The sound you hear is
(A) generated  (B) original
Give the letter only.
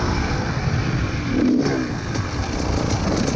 B